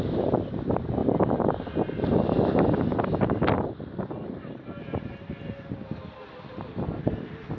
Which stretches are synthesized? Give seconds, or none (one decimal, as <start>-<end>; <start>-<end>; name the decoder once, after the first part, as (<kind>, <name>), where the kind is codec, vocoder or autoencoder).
none